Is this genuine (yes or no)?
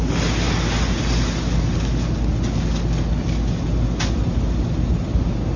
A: yes